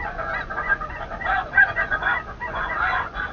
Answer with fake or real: fake